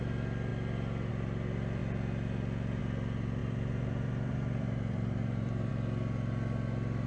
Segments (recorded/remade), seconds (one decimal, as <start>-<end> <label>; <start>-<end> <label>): 0.0-3.4 recorded; 3.4-5.7 remade; 5.7-7.1 recorded